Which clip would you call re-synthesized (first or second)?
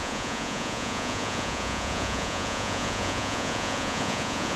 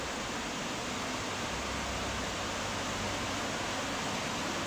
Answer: first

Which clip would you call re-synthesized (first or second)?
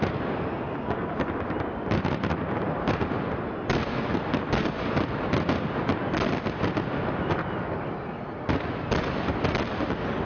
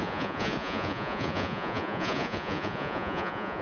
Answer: second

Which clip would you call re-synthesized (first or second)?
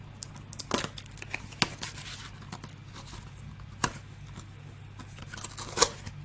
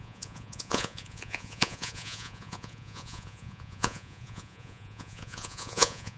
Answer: second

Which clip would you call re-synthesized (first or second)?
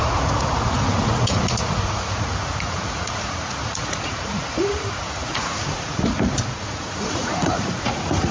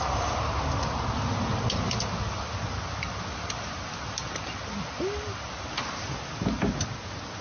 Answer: first